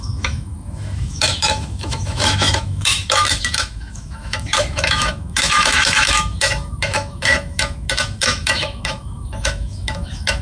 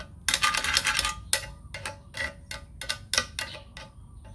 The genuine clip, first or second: second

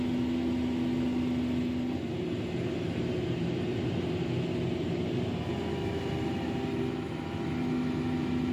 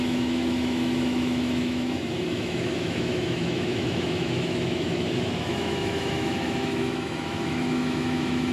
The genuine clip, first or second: first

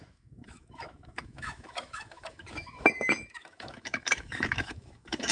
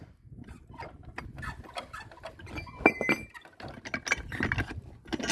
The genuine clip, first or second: second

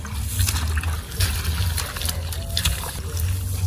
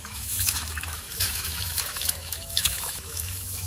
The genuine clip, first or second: first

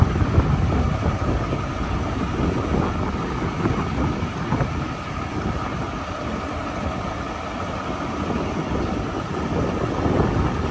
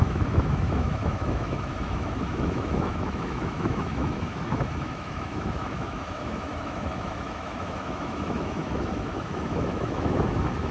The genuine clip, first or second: first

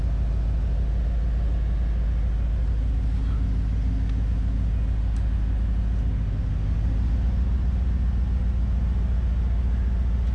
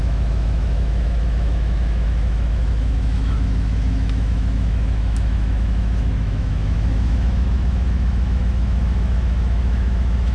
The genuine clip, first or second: first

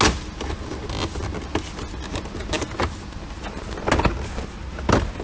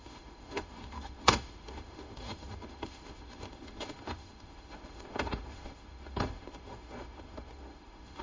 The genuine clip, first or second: first